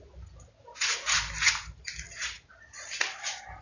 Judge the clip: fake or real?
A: real